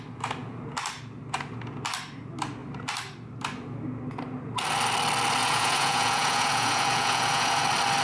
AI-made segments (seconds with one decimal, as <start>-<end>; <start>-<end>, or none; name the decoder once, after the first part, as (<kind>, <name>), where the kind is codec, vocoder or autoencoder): 5.4-7.6 (vocoder, Vocos)

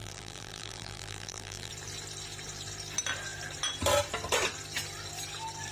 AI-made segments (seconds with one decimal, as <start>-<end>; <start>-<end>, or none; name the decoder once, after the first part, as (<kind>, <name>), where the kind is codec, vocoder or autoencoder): 0.0-1.7 (vocoder, BigVGAN v2)

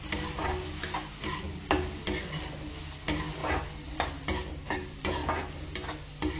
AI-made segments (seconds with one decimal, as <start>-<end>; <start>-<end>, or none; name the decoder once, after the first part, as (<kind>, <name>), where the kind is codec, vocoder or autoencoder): none

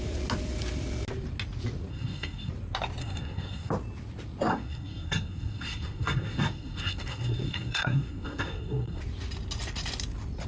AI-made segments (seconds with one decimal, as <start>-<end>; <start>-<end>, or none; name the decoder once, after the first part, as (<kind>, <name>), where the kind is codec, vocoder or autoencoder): 1.9-2.5 (codec, SNAC); 3.0-3.7; 4.5-9.0